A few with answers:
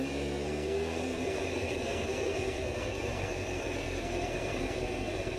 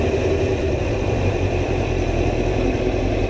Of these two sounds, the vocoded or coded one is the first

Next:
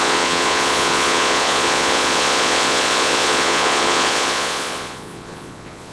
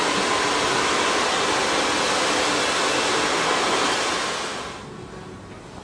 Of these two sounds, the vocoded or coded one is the first